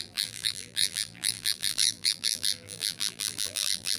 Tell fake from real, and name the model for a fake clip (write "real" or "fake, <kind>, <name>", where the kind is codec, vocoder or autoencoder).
fake, vocoder, BigVGAN v2